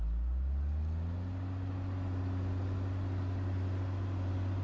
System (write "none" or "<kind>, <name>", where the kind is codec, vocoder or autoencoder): none